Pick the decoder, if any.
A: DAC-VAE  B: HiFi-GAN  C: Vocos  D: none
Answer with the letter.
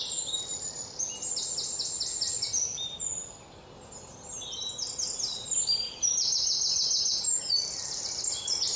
D